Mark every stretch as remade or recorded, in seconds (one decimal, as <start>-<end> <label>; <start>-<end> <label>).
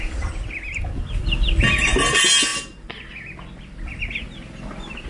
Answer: 0.0-5.1 recorded